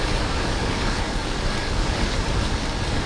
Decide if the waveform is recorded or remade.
remade